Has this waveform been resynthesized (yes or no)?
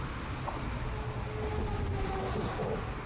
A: no